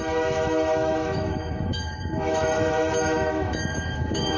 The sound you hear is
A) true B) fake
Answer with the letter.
B